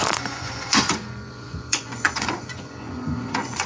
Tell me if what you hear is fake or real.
fake